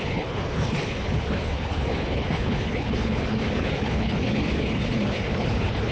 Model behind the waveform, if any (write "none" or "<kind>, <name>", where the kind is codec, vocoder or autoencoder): codec, HILCodec